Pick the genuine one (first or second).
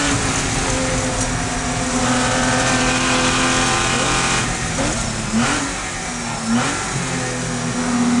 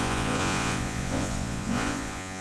first